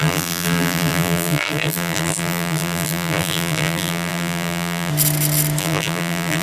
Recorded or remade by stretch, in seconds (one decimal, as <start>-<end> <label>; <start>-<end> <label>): 0.0-4.9 remade; 4.9-5.6 recorded; 5.6-6.4 remade